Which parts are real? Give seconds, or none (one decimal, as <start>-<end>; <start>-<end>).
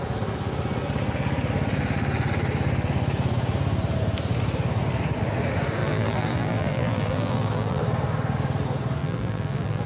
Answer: 0.0-5.8; 7.8-9.0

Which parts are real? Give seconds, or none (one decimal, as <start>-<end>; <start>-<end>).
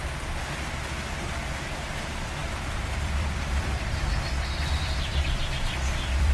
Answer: 0.0-2.4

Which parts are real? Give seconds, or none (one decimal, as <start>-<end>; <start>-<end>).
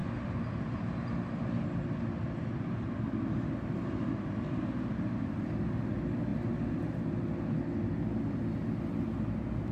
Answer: 0.0-9.7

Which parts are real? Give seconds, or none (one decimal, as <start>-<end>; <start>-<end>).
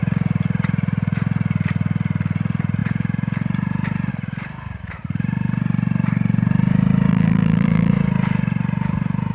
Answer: 0.0-7.1; 7.9-9.3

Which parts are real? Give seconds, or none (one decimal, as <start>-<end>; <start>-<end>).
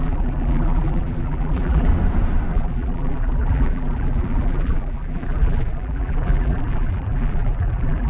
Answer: 1.9-2.5